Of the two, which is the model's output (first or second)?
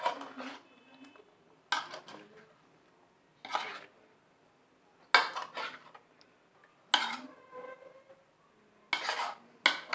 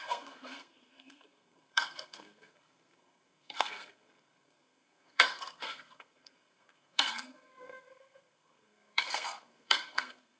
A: second